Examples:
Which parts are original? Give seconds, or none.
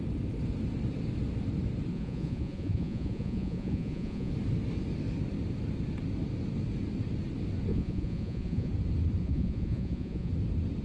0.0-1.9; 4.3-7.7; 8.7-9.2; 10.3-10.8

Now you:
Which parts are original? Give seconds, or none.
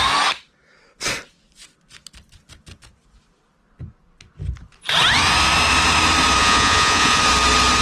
0.0-6.4; 7.2-7.8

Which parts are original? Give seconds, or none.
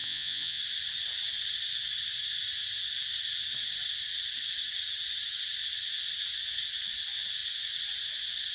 0.6-8.5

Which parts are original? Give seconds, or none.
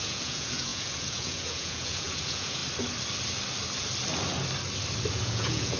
2.6-5.1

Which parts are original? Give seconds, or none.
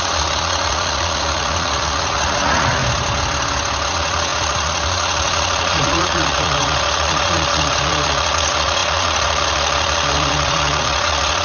2.8-3.9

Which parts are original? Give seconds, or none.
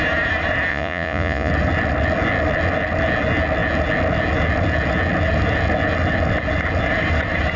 0.0-0.7; 1.5-7.6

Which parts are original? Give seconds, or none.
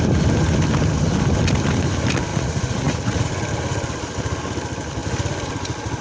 0.0-2.3; 3.3-6.0